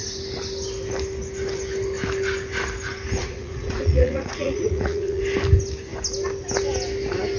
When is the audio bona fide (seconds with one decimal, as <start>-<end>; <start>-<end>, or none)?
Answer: 0.0-3.2; 5.2-7.4